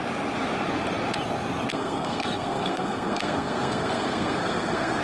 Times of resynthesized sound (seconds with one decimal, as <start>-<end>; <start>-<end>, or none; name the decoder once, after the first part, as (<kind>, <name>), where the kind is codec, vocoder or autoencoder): 1.7-5.0 (codec, SNAC)